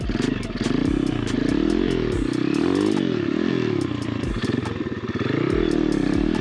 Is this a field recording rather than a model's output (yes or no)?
yes